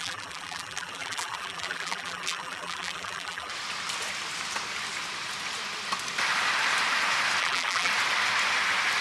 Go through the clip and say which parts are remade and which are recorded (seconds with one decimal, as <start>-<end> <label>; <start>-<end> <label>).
0.0-3.5 remade; 3.5-7.4 recorded; 7.4-7.9 remade; 7.9-9.0 recorded